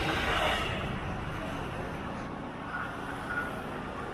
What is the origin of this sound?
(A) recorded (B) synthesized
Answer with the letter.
A